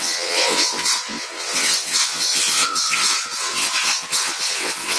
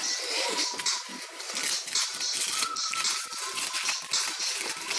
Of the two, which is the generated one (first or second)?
first